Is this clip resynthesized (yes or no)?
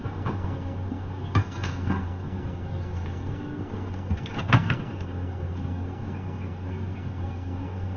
yes